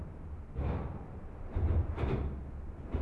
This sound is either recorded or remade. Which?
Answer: recorded